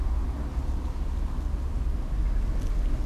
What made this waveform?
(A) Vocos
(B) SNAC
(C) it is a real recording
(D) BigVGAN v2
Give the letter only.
C